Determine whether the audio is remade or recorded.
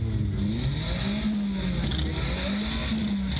recorded